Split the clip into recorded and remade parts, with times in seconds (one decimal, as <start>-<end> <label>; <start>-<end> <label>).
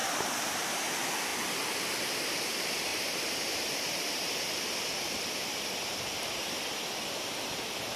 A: 0.0-0.8 remade; 0.8-2.9 recorded; 2.9-5.4 remade; 5.4-8.0 recorded